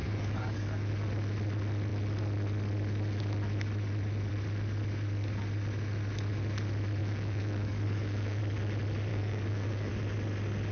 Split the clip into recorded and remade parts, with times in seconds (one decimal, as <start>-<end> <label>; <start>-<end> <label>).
0.0-0.9 remade; 0.9-7.0 recorded; 7.0-8.4 remade; 8.4-9.1 recorded; 9.1-9.9 remade; 9.9-10.7 recorded